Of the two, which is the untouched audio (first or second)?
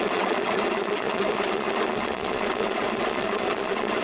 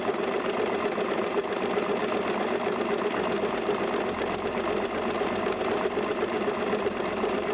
second